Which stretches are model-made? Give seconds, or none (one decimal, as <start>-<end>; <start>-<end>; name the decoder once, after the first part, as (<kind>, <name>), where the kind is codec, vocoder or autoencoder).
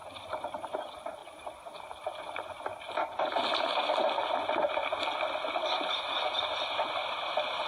0.0-2.7 (vocoder, BigVGAN v2); 5.1-5.6; 6.4-7.7